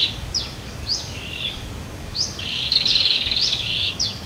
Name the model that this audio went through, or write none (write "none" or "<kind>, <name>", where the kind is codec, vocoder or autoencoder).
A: codec, DAC